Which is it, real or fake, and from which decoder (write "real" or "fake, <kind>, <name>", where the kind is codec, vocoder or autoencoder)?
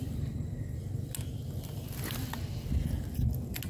real